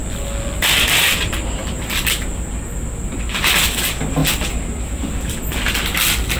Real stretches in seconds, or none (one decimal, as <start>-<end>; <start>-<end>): 0.0-1.6; 3.2-6.4